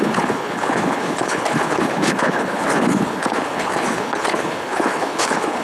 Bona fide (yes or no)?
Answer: no